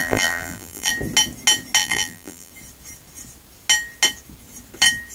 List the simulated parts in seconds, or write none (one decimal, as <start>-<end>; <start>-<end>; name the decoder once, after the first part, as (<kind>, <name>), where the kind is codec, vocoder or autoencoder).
0.0-0.9 (vocoder, BigVGAN v2); 1.8-2.5